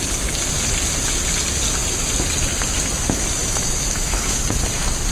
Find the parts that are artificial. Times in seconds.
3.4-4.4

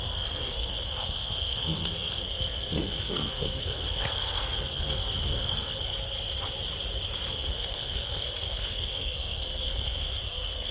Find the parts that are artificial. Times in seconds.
0.0-5.9; 7.3-10.7

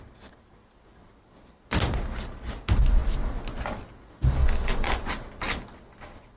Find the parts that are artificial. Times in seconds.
4.4-5.1

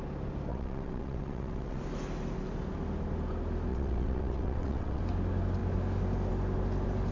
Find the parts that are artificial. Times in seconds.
0.5-1.8; 3.7-5.0

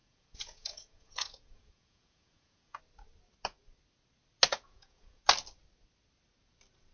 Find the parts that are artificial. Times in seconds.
0.0-2.8; 4.5-5.2

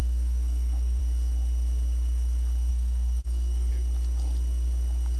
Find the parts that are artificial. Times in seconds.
0.0-1.0; 2.7-3.7

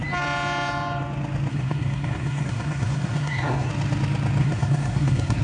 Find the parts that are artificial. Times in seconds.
1.5-3.7; 4.4-5.4

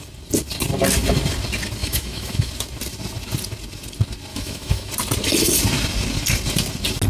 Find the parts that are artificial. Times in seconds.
1.8-2.5; 4.3-4.9